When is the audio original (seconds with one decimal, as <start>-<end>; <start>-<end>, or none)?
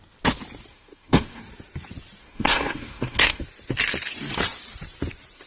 0.0-0.7; 1.4-2.2; 3.4-5.5